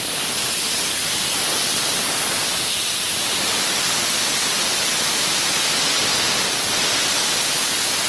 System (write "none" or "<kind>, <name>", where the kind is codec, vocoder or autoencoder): none